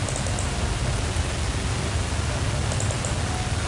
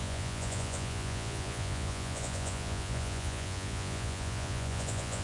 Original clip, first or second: first